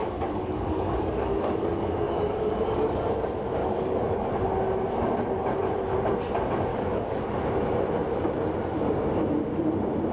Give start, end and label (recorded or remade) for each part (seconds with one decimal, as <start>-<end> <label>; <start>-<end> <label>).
0.0-3.0 remade; 3.0-3.6 recorded; 3.6-4.4 remade; 4.4-6.7 recorded; 6.7-7.4 remade; 7.4-10.1 recorded